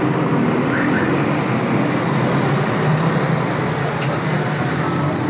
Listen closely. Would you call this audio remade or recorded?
recorded